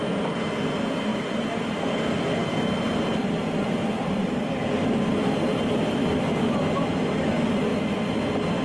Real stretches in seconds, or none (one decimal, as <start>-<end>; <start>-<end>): 7.7-8.6